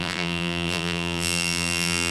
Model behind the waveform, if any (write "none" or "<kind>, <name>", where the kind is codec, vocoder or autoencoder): vocoder, BigVGAN v2